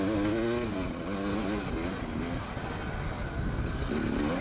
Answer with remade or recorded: recorded